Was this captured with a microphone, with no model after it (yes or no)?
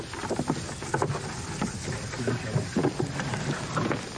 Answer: yes